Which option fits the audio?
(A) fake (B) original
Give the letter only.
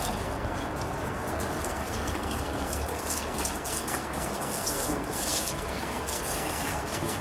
A